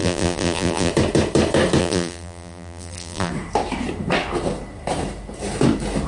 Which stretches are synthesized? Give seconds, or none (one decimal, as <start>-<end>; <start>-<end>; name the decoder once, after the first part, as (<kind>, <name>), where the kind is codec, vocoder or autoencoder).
0.0-0.9 (vocoder, BigVGAN v2); 1.8-3.3